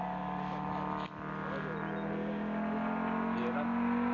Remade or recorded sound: recorded